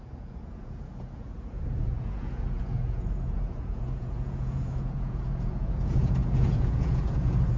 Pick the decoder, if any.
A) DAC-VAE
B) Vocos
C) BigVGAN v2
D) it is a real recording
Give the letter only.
B